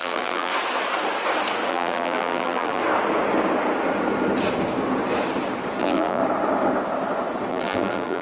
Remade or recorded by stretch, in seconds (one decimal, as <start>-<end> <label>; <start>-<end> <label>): 0.0-0.5 remade; 0.5-1.7 recorded; 1.7-2.8 remade; 2.8-5.8 recorded; 5.8-6.2 remade; 6.2-7.5 recorded; 7.5-8.2 remade

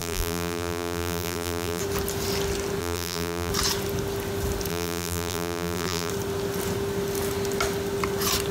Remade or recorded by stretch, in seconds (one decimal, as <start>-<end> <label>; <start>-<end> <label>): 0.0-1.8 remade; 1.8-2.8 recorded; 2.8-3.5 remade; 3.5-4.7 recorded; 4.7-6.1 remade; 6.1-8.5 recorded

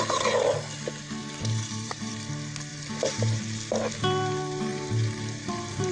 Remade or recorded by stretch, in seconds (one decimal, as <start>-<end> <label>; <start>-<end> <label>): 0.0-1.2 recorded; 1.2-2.1 remade; 2.1-2.7 recorded; 2.7-3.4 remade; 3.4-4.7 recorded; 4.7-5.9 remade